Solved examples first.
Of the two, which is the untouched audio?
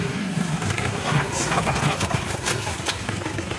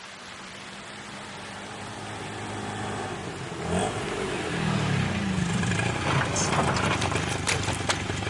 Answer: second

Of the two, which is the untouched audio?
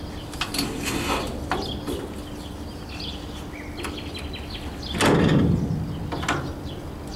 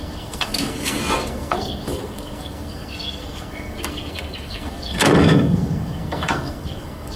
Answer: first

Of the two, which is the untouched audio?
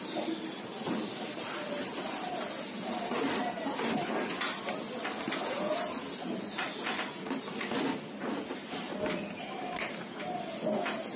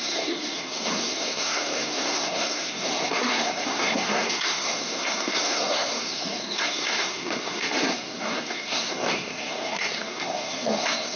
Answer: first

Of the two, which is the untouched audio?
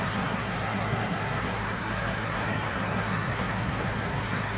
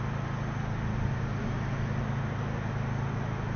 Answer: second